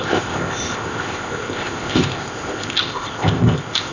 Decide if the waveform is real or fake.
fake